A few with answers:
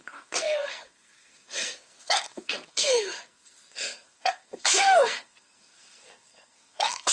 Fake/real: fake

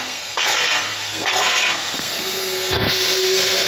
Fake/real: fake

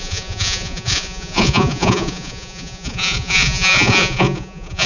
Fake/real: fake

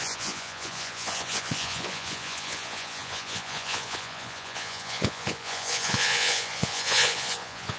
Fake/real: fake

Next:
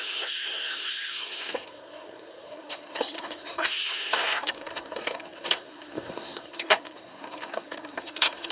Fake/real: fake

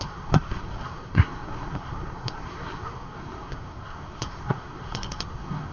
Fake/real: fake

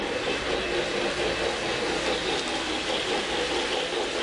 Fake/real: real